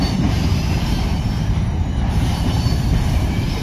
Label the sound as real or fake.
fake